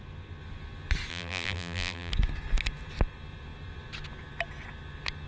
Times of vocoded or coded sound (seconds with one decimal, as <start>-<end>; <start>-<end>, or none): 1.1-2.1

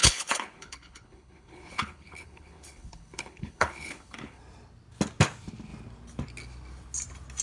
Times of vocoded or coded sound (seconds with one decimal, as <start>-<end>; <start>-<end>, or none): 0.0-4.4

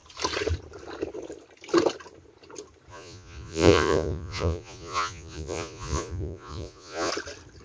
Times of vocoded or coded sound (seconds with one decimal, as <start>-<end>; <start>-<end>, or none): 2.9-7.1

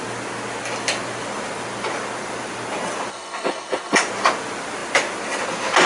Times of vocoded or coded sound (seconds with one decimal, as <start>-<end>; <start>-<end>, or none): 3.1-4.0